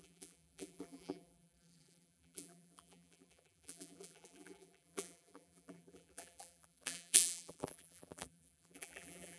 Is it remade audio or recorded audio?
remade